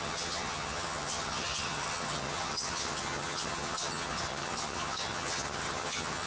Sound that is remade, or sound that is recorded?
remade